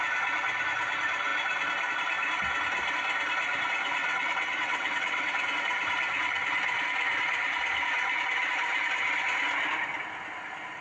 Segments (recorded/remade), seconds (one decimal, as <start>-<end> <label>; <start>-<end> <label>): 0.0-4.0 recorded; 4.0-5.4 remade; 5.4-10.8 recorded